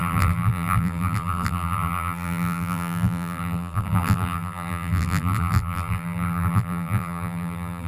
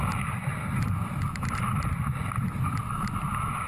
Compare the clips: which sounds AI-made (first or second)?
first